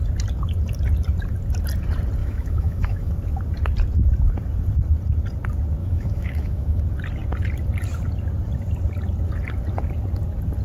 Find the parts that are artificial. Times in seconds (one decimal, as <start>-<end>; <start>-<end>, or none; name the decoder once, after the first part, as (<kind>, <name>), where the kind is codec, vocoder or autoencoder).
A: 2.2-3.1 (autoencoder, DAC-VAE); 5.8-6.8